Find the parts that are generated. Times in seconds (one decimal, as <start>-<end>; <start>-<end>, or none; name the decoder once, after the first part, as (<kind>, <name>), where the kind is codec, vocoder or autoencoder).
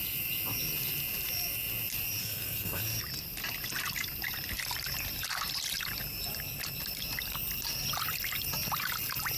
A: 2.2-2.8 (codec, SNAC)